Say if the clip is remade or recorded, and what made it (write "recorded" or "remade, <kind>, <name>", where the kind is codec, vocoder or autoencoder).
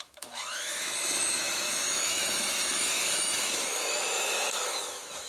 remade, autoencoder, DAC-VAE